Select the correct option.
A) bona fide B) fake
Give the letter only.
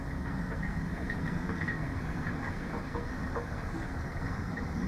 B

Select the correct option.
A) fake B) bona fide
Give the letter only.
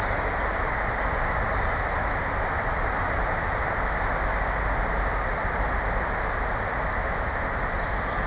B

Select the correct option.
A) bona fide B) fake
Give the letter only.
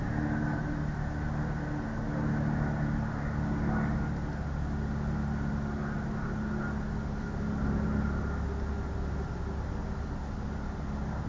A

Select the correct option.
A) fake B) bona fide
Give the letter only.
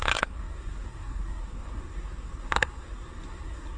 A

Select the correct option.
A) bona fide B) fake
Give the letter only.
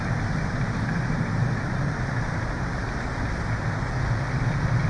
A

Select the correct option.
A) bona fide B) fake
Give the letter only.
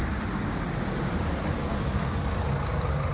A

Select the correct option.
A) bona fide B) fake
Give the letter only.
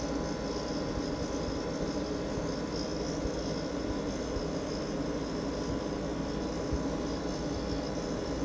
A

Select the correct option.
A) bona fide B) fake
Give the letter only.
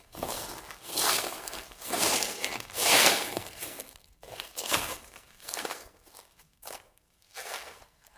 B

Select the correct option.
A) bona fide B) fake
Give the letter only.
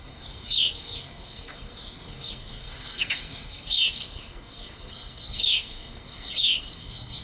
B